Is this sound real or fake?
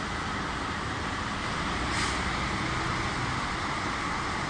real